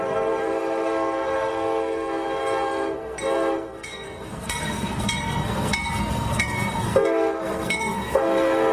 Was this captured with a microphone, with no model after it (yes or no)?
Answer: no